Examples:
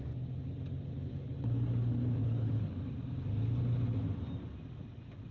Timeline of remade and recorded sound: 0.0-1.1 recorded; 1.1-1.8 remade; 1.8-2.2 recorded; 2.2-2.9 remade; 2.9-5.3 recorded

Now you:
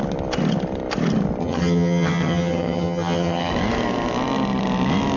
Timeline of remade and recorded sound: 0.0-1.4 recorded; 1.4-3.5 remade; 3.5-5.2 recorded

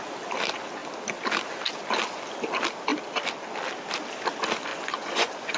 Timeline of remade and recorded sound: 0.0-4.7 recorded; 4.7-5.6 remade

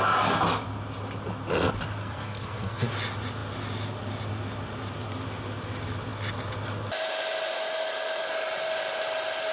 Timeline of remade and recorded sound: 0.0-2.0 recorded; 2.0-2.9 remade; 2.9-9.5 recorded

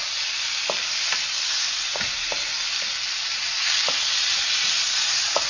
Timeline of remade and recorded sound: 0.0-5.5 recorded

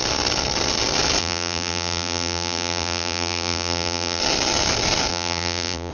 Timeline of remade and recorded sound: 0.0-1.2 recorded; 1.2-4.2 remade; 4.2-5.1 recorded; 5.1-5.9 remade